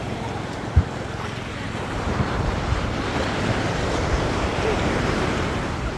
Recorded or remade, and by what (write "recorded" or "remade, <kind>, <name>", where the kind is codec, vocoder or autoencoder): remade, vocoder, BigVGAN v2